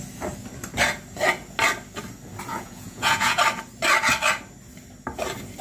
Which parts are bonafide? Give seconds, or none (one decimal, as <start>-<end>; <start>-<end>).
0.0-2.5; 3.4-5.6